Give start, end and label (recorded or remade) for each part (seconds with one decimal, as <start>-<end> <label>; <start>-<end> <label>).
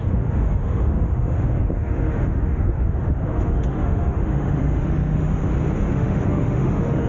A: 0.0-5.4 remade; 5.4-5.9 recorded; 5.9-7.1 remade